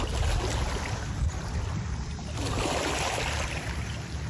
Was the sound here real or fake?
real